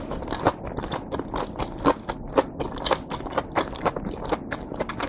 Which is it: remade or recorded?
recorded